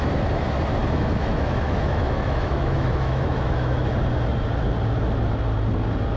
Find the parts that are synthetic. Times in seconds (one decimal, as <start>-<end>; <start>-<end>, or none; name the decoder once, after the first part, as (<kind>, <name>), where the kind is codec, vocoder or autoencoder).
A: 0.8-3.9 (autoencoder, DAC-VAE)